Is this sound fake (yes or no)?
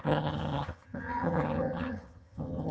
yes